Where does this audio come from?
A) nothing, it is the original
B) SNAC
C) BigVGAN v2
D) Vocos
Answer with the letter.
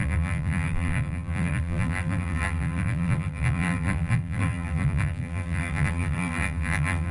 C